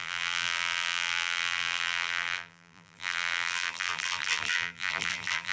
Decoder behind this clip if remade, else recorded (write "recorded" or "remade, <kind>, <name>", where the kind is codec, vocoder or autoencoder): remade, vocoder, BigVGAN v2